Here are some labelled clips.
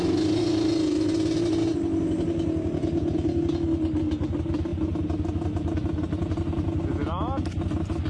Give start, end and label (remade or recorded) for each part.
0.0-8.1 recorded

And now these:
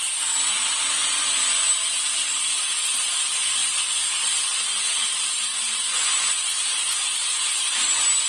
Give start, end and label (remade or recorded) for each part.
0.0-1.0 recorded; 1.0-1.7 remade; 1.7-5.5 recorded; 5.5-7.5 remade; 7.5-8.3 recorded

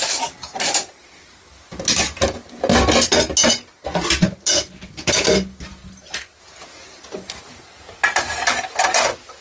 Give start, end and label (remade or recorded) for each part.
0.0-9.4 recorded

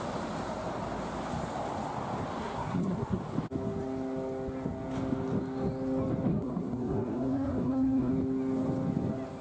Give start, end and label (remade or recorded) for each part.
0.0-2.4 recorded; 2.4-3.2 remade; 3.2-6.3 recorded; 6.3-8.1 remade; 8.1-9.4 recorded

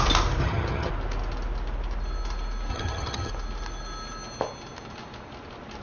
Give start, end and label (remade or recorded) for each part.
0.0-0.4 recorded; 0.4-0.9 remade; 0.9-2.7 recorded; 2.7-3.3 remade; 3.3-5.8 recorded

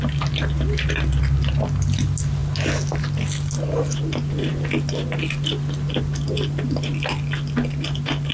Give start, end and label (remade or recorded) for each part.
0.0-8.3 recorded

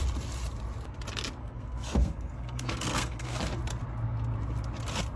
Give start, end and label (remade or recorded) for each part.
0.0-1.4 recorded; 1.4-3.5 remade; 3.5-5.2 recorded

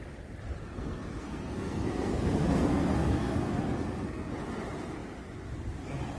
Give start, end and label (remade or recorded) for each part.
0.0-0.6 recorded; 0.6-4.3 remade; 4.3-6.2 recorded